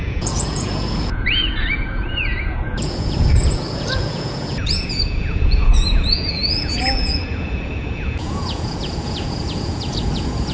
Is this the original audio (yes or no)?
no